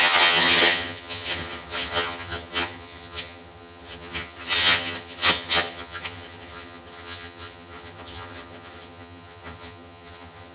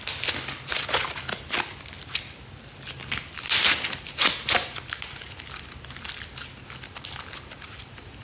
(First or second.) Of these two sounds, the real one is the second